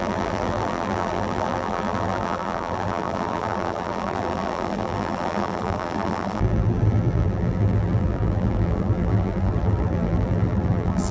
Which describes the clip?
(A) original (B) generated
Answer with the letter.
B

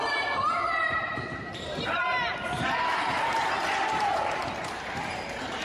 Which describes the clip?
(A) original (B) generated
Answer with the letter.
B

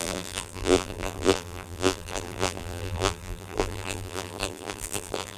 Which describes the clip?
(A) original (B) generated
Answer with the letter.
B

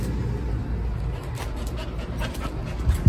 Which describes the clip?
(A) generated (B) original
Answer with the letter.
B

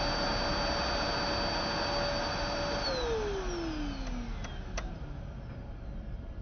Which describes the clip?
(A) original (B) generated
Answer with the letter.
A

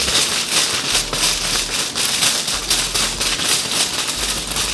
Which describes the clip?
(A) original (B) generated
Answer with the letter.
A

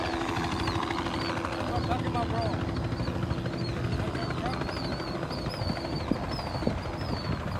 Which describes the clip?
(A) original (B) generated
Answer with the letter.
A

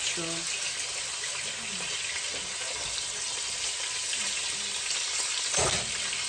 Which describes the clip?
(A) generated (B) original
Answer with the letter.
B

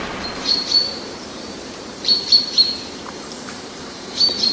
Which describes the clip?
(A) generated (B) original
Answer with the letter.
A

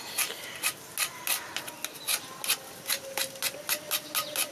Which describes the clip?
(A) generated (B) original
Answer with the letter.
B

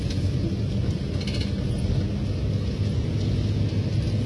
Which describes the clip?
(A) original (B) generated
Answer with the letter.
A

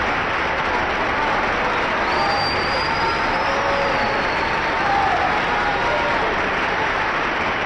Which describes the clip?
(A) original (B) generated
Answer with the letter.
A